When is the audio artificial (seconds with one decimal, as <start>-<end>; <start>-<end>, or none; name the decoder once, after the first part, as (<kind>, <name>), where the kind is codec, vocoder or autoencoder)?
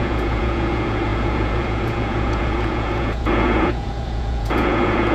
0.0-5.1 (vocoder, Vocos)